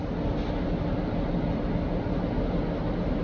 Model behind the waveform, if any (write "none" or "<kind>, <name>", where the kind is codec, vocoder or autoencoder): none